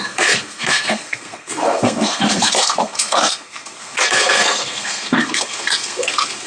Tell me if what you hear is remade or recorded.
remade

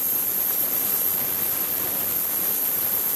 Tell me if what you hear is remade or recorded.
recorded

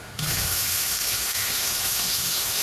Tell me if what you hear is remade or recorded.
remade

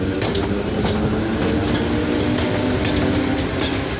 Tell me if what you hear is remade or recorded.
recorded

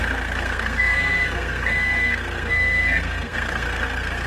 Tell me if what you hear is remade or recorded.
remade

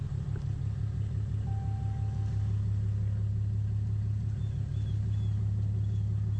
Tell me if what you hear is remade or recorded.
recorded